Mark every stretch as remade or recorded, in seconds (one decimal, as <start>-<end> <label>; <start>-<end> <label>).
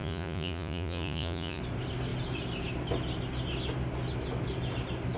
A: 0.0-1.6 remade; 1.6-5.2 recorded